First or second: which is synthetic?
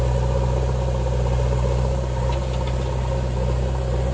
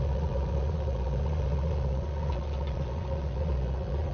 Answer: second